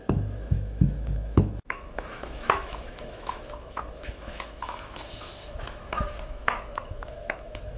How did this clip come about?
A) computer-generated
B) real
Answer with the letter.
A